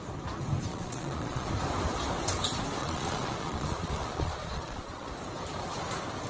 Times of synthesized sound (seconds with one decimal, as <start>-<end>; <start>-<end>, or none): 0.7-1.5; 2.8-5.1

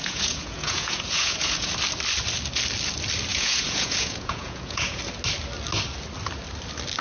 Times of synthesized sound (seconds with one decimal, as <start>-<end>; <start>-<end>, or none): 0.0-1.7; 3.3-5.0